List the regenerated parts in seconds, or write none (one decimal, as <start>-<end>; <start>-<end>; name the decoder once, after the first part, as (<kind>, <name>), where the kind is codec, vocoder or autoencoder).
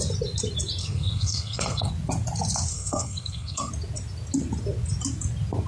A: 0.8-1.9 (codec, SNAC); 2.7-3.7